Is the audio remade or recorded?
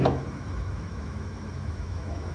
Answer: remade